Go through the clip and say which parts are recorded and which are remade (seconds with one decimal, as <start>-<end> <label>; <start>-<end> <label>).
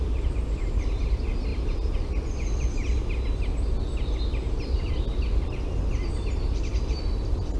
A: 0.0-7.6 recorded